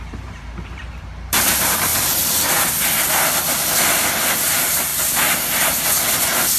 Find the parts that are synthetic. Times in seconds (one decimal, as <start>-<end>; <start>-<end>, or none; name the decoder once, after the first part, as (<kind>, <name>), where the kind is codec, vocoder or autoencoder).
0.0-1.9 (vocoder, BigVGAN v2); 4.4-4.9